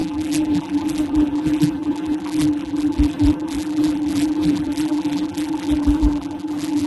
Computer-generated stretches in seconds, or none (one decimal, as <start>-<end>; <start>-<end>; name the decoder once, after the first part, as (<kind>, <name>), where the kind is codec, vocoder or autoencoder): 0.0-6.9 (vocoder, BigVGAN v2)